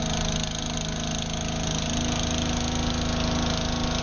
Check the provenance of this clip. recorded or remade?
recorded